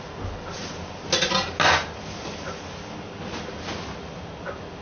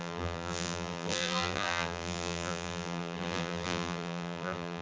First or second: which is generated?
second